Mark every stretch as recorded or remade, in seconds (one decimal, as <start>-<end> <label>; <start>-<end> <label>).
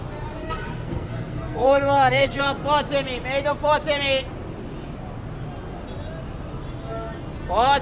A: 0.0-0.4 recorded; 0.4-2.4 remade; 2.4-7.8 recorded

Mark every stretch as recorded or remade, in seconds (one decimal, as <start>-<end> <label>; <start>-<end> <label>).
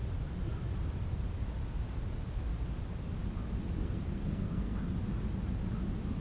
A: 0.0-3.8 recorded; 3.8-4.9 remade; 4.9-6.2 recorded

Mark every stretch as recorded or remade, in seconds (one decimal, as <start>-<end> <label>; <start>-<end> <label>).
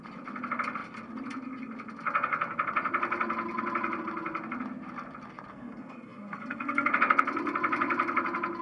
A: 0.0-5.5 recorded; 5.5-6.9 remade; 6.9-8.6 recorded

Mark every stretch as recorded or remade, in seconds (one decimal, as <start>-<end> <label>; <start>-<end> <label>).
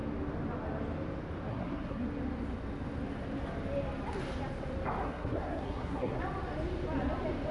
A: 0.0-1.5 recorded; 1.5-2.0 remade; 2.0-5.0 recorded; 5.0-6.2 remade; 6.2-7.5 recorded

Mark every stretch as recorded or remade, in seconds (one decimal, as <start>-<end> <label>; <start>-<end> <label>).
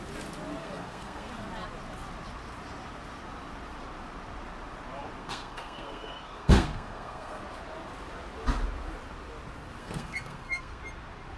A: 0.0-0.6 recorded; 0.6-1.3 remade; 1.3-5.2 recorded; 5.2-7.4 remade; 7.4-9.8 recorded; 9.8-10.8 remade; 10.8-11.4 recorded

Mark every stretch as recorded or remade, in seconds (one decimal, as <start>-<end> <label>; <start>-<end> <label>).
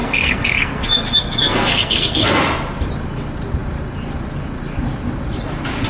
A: 0.0-2.4 remade; 2.4-5.9 recorded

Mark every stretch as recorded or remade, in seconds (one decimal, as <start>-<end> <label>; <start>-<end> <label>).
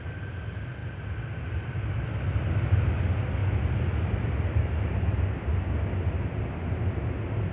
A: 0.0-7.5 recorded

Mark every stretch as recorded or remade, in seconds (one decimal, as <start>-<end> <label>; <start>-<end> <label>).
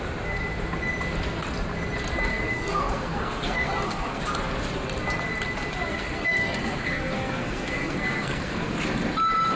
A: 0.0-2.3 recorded; 2.3-4.2 remade; 4.2-5.9 recorded; 5.9-8.7 remade; 8.7-9.6 recorded